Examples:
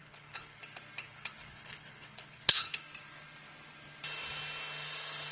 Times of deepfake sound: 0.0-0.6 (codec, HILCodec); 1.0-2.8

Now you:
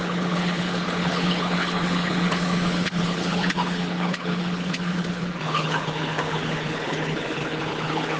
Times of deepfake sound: 0.0-8.2 (codec, HILCodec)

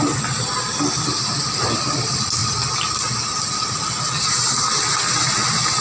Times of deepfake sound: none

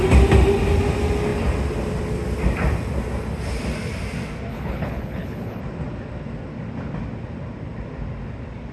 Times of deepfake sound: 4.5-5.6 (codec, HILCodec)

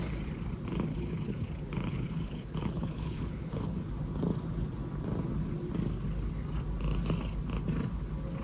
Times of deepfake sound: 0.9-3.9 (codec, HILCodec)

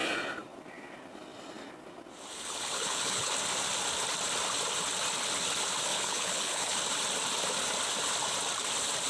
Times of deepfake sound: 2.3-3.3 (codec, HILCodec); 5.9-6.8